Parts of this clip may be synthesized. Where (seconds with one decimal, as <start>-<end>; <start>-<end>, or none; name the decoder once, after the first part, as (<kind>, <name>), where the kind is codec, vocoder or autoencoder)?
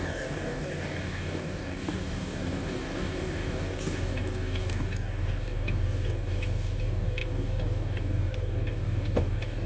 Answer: 0.0-9.7 (codec, DAC)